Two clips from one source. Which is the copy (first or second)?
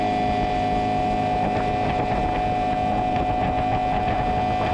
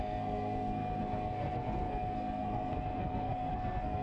second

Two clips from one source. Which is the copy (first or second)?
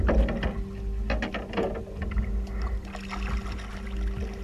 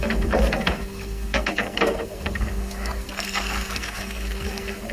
second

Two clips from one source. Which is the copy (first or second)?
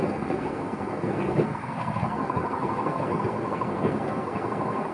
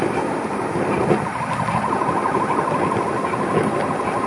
first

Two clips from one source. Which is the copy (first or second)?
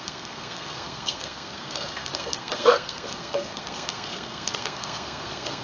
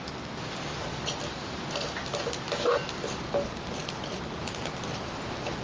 first